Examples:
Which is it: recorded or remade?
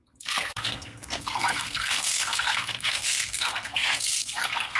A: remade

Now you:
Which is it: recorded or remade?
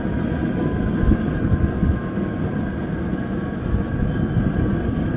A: recorded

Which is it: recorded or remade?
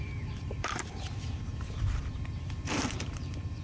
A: remade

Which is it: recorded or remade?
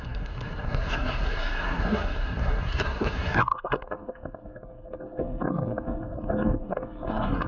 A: remade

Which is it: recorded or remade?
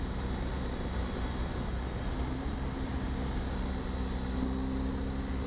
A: recorded